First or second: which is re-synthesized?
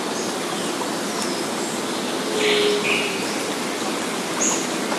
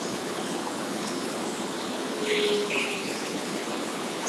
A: second